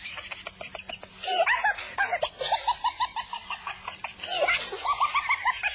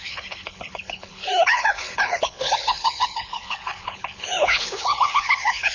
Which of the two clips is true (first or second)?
first